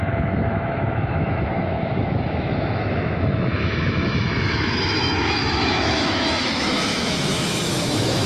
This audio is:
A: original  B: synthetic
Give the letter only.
B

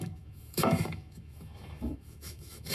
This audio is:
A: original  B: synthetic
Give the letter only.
B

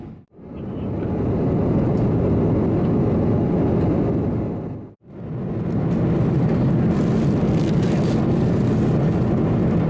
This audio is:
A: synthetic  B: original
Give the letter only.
B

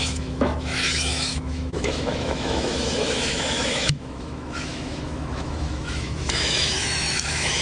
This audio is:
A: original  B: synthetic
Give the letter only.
B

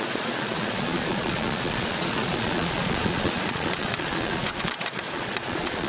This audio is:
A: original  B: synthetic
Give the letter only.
B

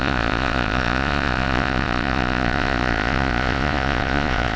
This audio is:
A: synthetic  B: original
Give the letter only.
A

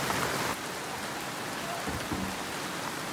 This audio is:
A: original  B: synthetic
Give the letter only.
A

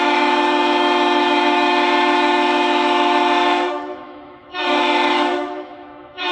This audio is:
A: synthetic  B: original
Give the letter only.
A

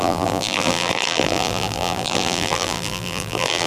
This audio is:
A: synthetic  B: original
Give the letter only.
A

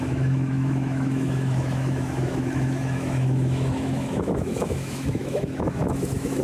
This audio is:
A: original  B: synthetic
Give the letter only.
B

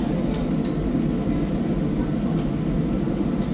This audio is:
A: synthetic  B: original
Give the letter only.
B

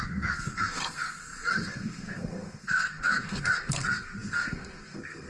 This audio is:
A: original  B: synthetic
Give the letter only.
B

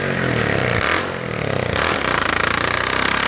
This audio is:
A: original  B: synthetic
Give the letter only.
A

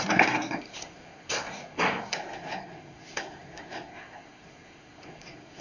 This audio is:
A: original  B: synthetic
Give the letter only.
B